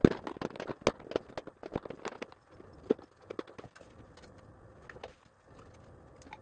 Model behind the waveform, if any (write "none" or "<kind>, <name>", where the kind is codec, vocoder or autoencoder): none